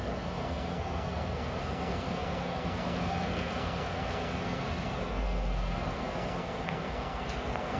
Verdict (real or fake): fake